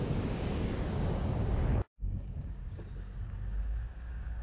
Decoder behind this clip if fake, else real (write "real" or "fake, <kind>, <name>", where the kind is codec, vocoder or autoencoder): fake, codec, DAC